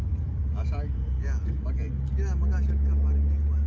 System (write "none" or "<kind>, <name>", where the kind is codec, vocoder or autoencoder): none